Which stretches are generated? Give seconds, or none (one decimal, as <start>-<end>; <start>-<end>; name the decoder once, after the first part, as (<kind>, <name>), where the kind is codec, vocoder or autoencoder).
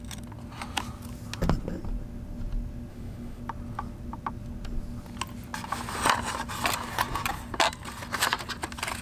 2.9-3.4 (autoencoder, DAC-VAE)